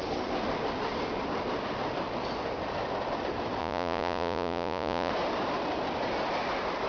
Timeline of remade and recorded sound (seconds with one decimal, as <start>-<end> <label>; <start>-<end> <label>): 0.0-3.6 recorded; 3.6-5.1 remade; 5.1-6.9 recorded